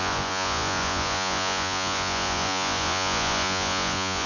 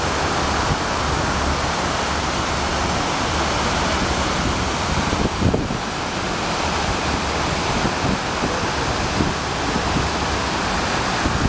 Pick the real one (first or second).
second